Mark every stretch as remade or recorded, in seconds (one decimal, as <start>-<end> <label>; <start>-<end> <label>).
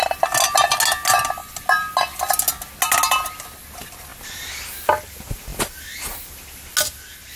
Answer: 0.0-1.4 recorded; 1.4-1.9 remade; 1.9-4.1 recorded; 4.1-4.6 remade; 4.6-5.5 recorded; 5.5-6.3 remade; 6.3-7.4 recorded